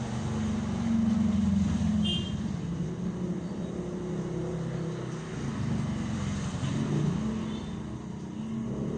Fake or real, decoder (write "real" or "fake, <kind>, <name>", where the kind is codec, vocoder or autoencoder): real